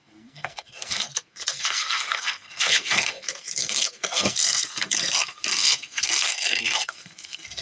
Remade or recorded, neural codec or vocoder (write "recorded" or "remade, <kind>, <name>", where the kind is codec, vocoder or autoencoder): remade, codec, SNAC